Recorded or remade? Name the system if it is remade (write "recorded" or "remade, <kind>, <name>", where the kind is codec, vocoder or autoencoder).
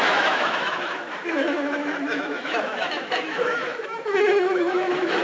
remade, autoencoder, DAC-VAE